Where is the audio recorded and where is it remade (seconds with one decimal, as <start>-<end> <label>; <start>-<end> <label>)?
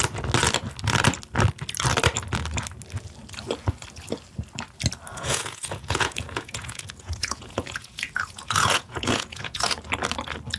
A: 0.0-5.1 recorded; 5.1-9.8 remade; 9.8-10.6 recorded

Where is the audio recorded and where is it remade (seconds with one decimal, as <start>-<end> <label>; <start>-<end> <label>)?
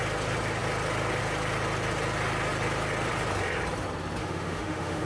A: 0.0-4.2 recorded; 4.2-5.1 remade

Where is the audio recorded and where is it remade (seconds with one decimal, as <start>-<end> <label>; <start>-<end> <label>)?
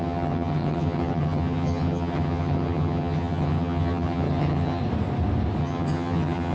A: 0.0-4.8 remade; 4.8-5.6 recorded; 5.6-6.5 remade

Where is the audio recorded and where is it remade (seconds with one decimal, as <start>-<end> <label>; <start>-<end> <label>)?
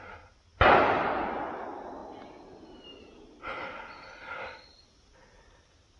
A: 0.0-6.0 recorded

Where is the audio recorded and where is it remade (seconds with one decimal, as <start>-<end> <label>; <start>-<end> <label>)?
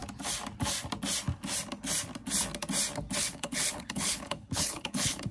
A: 0.0-3.2 recorded; 3.2-5.3 remade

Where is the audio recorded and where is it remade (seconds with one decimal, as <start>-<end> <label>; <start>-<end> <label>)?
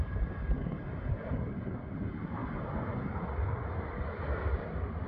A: 0.0-5.1 recorded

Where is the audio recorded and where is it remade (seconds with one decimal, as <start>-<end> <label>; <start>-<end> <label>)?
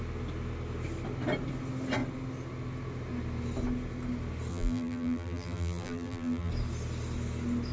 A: 0.0-4.5 recorded; 4.5-6.5 remade; 6.5-7.7 recorded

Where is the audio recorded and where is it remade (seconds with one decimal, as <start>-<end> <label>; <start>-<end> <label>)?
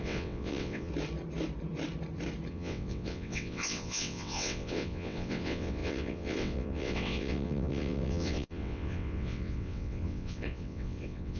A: 0.0-0.9 remade; 0.9-2.5 recorded; 2.5-11.4 remade